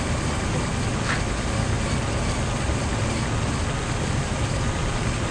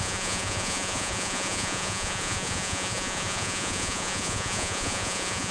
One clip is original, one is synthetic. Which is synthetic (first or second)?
second